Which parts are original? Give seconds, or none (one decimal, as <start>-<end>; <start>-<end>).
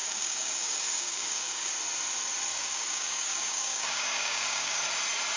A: 1.7-2.5; 4.8-5.4